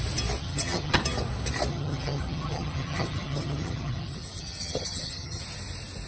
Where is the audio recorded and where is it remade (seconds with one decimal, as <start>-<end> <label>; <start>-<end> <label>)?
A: 0.0-0.4 recorded; 0.4-1.0 remade; 1.0-1.7 recorded; 1.7-5.4 remade; 5.4-6.1 recorded